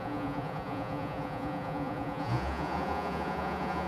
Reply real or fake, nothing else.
fake